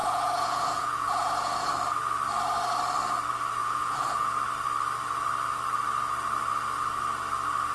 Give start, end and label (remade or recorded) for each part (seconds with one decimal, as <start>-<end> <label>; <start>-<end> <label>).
0.0-1.7 remade; 1.7-3.6 recorded; 3.6-4.3 remade; 4.3-7.7 recorded